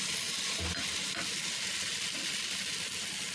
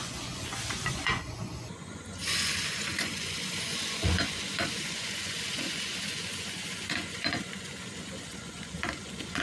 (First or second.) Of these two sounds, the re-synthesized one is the second